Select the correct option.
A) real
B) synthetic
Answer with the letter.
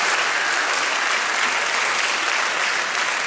A